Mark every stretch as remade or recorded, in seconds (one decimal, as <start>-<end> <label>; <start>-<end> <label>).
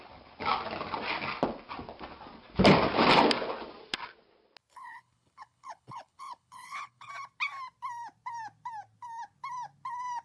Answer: 0.0-4.7 recorded; 4.7-7.1 remade; 7.1-10.2 recorded